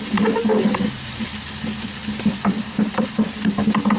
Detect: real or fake real